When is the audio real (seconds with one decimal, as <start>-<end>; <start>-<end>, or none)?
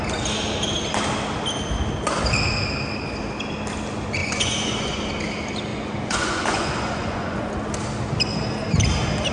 0.0-4.2; 5.1-5.7; 7.5-9.3